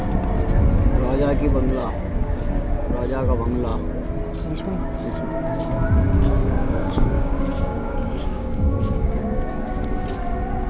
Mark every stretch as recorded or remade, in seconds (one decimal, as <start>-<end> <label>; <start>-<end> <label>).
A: 0.0-1.8 recorded; 1.8-2.9 remade; 2.9-6.4 recorded; 6.4-9.7 remade; 9.7-10.7 recorded